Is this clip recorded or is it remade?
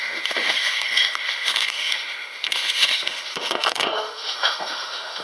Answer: remade